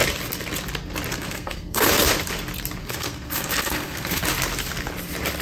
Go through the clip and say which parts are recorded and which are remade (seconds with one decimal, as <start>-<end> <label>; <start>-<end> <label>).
0.0-1.1 recorded; 1.1-1.9 remade; 1.9-2.8 recorded; 2.8-4.2 remade; 4.2-5.4 recorded